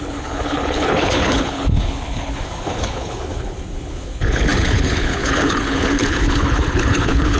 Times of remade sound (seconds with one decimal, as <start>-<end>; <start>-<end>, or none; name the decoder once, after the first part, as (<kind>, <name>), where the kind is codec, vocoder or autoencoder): 0.0-7.4 (codec, HILCodec)